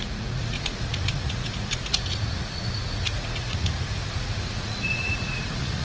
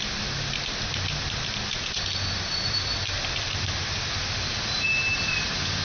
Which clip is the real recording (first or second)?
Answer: second